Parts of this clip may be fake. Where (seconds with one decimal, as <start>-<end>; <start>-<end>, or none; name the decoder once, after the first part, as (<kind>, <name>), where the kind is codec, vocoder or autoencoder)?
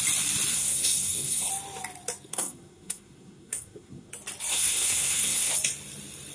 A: 0.5-1.5 (codec, SNAC); 2.3-4.1; 4.5-5.5